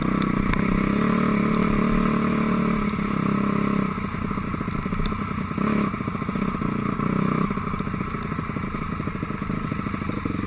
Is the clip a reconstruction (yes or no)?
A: no